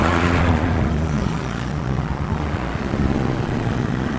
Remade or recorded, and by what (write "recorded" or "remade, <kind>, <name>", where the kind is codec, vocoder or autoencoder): remade, vocoder, Vocos